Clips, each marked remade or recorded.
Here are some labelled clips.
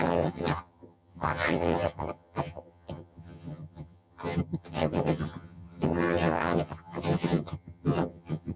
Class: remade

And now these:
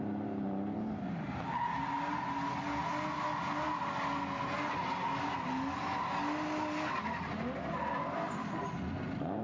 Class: recorded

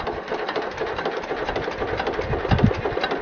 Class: recorded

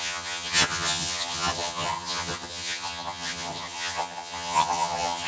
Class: remade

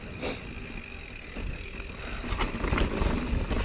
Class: recorded